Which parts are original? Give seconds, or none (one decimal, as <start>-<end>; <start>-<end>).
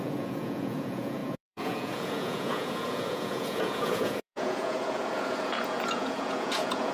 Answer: none